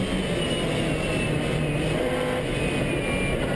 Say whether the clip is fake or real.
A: real